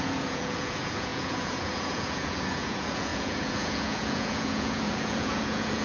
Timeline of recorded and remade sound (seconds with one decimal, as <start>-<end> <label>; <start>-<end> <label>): 0.0-5.8 remade

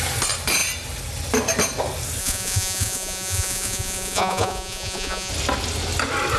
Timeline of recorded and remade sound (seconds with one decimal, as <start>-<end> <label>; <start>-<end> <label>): 0.0-2.2 recorded; 2.2-5.3 remade; 5.3-6.4 recorded